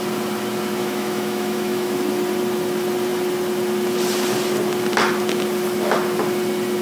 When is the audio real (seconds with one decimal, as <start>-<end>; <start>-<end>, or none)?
0.0-0.8; 2.0-6.8

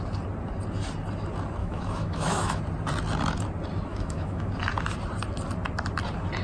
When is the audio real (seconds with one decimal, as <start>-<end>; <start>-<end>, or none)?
0.0-1.6; 2.6-3.9; 4.5-6.4

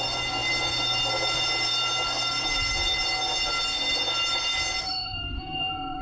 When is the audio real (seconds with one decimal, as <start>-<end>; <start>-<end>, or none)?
0.0-4.8

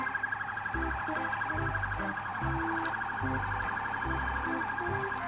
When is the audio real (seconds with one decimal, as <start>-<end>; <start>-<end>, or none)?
0.0-5.3

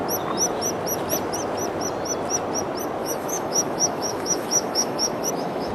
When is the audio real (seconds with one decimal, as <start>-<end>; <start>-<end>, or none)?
0.0-3.0

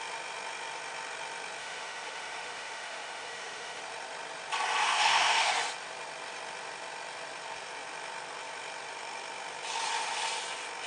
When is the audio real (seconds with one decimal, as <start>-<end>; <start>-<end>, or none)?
0.0-1.6; 3.8-4.8; 5.5-10.9